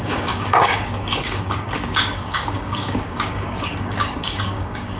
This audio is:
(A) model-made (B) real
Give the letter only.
A